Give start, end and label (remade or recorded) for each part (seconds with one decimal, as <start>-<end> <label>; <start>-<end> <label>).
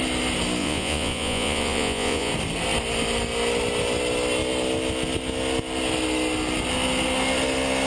0.0-0.6 recorded; 0.6-2.3 remade; 2.3-7.9 recorded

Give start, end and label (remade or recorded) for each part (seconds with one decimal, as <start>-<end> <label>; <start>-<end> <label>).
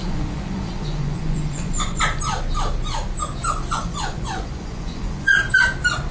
0.0-2.0 remade; 2.0-3.7 recorded; 3.7-5.3 remade; 5.3-6.1 recorded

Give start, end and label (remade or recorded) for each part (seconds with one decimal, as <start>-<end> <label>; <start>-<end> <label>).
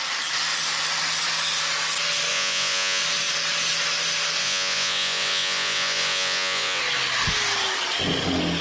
0.0-2.3 recorded; 2.3-3.0 remade; 3.0-4.4 recorded; 4.4-6.8 remade; 6.8-8.6 recorded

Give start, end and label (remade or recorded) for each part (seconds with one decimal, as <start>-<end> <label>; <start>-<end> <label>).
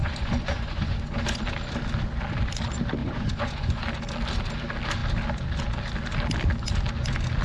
0.0-1.4 remade; 1.4-3.0 recorded; 3.0-3.8 remade; 3.8-7.4 recorded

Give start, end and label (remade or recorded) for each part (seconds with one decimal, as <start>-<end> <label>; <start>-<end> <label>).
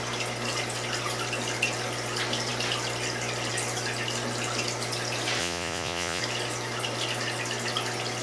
0.0-5.4 recorded; 5.4-6.2 remade; 6.2-8.2 recorded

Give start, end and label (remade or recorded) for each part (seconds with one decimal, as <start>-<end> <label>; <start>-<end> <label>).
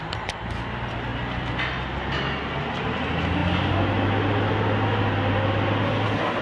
0.0-6.4 recorded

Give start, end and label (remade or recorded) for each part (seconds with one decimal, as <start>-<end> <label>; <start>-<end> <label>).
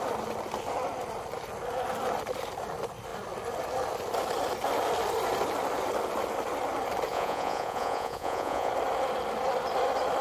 0.0-7.1 recorded; 7.1-8.7 remade; 8.7-10.2 recorded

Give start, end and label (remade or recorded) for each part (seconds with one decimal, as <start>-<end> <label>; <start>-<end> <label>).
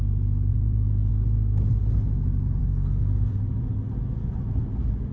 0.0-0.5 recorded; 0.5-1.1 remade; 1.1-2.6 recorded; 2.6-3.4 remade; 3.4-5.1 recorded